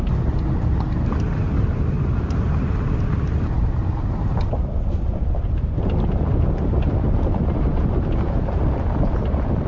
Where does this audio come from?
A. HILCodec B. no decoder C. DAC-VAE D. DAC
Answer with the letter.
B